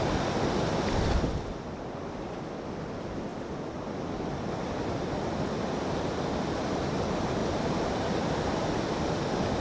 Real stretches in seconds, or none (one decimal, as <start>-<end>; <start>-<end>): 0.0-7.4; 8.3-9.6

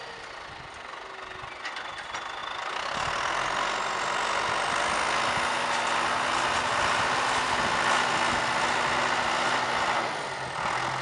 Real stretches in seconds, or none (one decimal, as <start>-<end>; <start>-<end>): 0.0-11.0